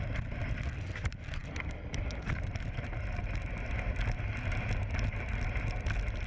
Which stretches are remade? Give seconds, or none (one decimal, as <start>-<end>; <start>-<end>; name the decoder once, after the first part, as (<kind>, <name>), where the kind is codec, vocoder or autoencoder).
none